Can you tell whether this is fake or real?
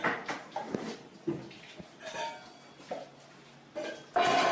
real